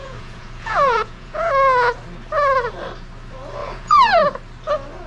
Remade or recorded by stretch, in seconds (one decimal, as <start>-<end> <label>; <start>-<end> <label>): 0.0-1.5 remade; 1.5-3.6 recorded; 3.6-4.2 remade; 4.2-5.1 recorded